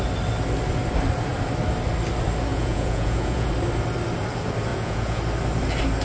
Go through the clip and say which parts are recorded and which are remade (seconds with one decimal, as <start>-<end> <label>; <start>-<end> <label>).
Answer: 0.0-2.5 recorded; 2.5-3.5 remade; 3.5-4.7 recorded; 4.7-5.2 remade; 5.2-6.0 recorded